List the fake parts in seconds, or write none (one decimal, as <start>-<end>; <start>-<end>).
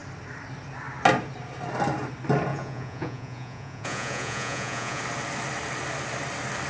2.5-5.0